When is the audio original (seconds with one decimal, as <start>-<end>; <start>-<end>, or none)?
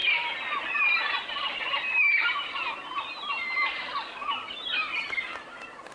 0.0-5.9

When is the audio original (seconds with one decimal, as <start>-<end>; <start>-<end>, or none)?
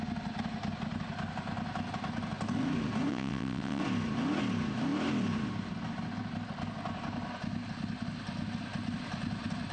0.0-3.1; 3.8-9.7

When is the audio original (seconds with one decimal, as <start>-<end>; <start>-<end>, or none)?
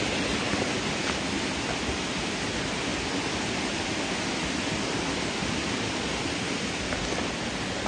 0.0-7.9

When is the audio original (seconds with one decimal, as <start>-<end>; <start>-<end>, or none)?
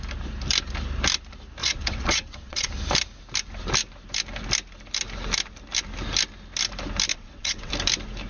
0.0-1.6; 2.7-7.1; 7.7-8.3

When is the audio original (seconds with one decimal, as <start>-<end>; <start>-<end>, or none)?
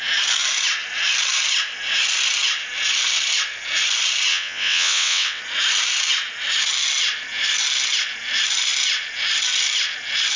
0.0-4.3; 5.4-10.4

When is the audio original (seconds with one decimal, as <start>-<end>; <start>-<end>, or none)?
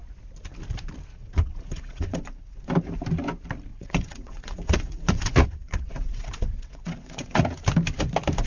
0.0-1.2; 2.7-3.7; 7.4-8.5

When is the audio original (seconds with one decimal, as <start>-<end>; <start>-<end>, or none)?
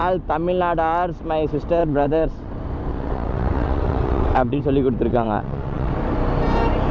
0.0-1.8; 2.5-2.9; 4.6-5.1; 5.9-6.9